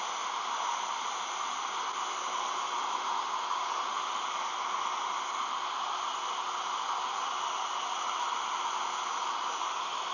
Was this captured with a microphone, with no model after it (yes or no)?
yes